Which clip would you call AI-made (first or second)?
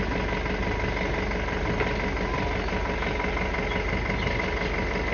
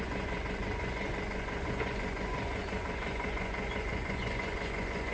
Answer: second